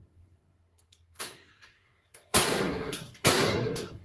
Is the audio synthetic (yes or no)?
yes